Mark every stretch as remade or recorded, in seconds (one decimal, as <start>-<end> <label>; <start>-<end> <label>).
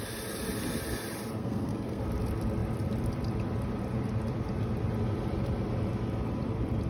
0.0-1.4 recorded; 1.4-2.0 remade; 2.0-6.9 recorded